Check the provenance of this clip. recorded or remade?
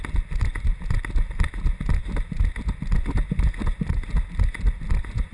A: recorded